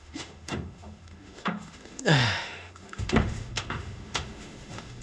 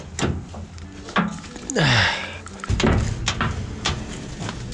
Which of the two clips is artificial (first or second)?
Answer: first